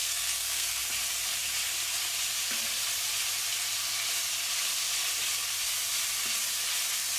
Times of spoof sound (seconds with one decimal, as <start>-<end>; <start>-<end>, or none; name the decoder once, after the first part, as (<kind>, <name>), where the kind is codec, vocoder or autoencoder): 0.0-0.8 (codec, SNAC)